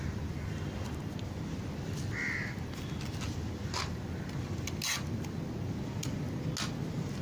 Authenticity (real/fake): real